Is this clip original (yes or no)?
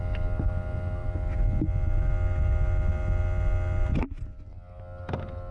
yes